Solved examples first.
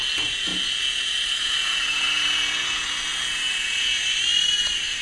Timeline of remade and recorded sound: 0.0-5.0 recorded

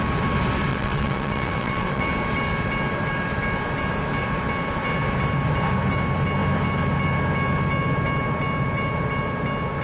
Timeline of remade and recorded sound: 0.0-0.7 recorded; 0.7-2.0 remade; 2.0-9.8 recorded

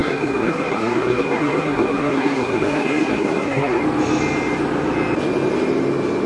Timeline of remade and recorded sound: 0.0-3.8 remade; 3.8-6.3 recorded

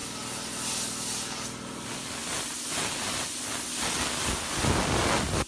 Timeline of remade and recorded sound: 0.0-5.5 recorded

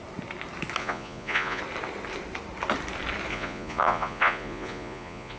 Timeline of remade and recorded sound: 0.0-0.8 recorded; 0.8-1.6 remade; 1.6-3.3 recorded; 3.3-5.4 remade

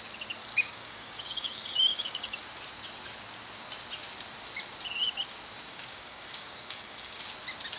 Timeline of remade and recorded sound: 0.0-0.4 recorded; 0.4-2.4 remade; 2.4-5.7 recorded; 5.7-7.2 remade; 7.2-7.8 recorded

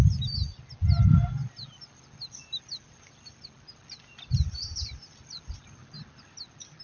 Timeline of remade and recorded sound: 0.0-6.8 recorded